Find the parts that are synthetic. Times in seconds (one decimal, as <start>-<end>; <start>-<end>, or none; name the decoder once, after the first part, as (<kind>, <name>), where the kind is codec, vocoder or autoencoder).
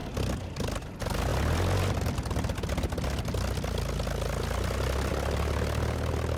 none